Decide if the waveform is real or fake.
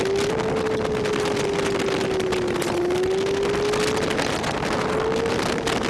real